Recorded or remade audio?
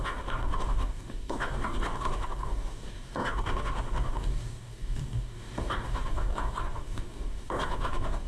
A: remade